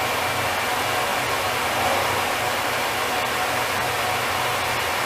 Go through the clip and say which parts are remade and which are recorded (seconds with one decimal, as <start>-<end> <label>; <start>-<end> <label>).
0.0-5.1 recorded

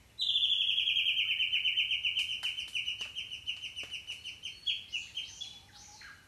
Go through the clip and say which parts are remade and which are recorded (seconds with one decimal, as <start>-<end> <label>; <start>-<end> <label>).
0.0-6.3 recorded